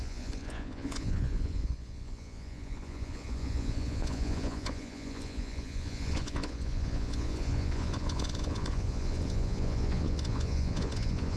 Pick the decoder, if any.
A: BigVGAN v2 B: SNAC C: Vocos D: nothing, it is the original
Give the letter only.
C